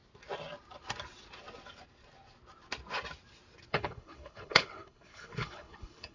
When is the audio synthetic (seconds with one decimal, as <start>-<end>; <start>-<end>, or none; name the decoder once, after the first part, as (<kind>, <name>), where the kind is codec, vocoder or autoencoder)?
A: 3.7-6.1 (codec, HILCodec)